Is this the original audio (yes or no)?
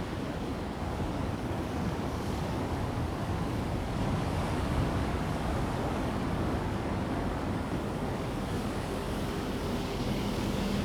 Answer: no